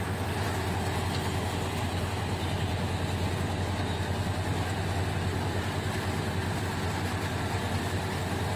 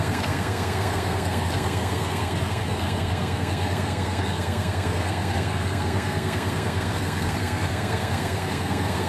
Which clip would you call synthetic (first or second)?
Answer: second